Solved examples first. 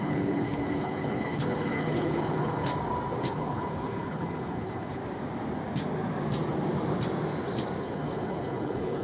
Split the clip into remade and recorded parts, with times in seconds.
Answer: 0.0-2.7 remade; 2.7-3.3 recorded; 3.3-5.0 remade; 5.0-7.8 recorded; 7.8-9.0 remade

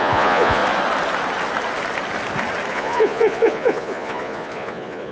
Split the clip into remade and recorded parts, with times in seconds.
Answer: 0.0-0.6 remade; 0.6-2.7 recorded; 2.7-5.1 remade

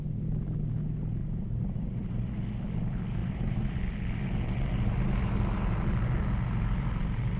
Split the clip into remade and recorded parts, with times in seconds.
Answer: 0.0-1.2 recorded; 1.2-2.3 remade; 2.3-3.2 recorded; 3.2-3.8 remade; 3.8-7.4 recorded

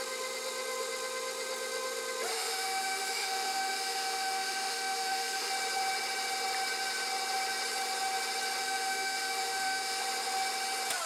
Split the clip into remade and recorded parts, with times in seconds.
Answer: 0.0-2.3 recorded; 2.3-5.5 remade; 5.5-8.6 recorded; 8.6-10.0 remade; 10.0-11.1 recorded

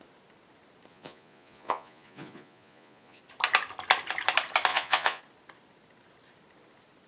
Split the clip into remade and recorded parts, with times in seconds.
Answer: 0.0-0.9 recorded; 0.9-3.2 remade; 3.2-4.7 recorded; 4.7-5.2 remade; 5.2-7.1 recorded

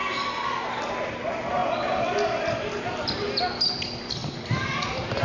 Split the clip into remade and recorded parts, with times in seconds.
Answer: 0.0-4.2 recorded; 4.2-5.2 remade